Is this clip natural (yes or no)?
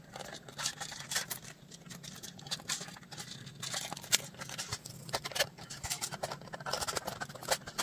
yes